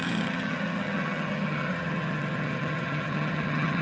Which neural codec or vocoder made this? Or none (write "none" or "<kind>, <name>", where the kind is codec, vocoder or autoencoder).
vocoder, HiFi-GAN